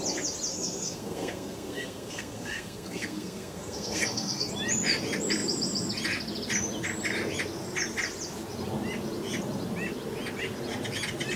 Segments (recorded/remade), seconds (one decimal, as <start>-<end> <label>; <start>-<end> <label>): 0.0-0.5 recorded; 0.5-4.5 remade; 4.5-11.4 recorded